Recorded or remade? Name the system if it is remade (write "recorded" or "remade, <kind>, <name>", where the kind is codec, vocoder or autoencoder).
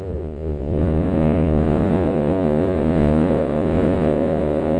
remade, vocoder, Vocos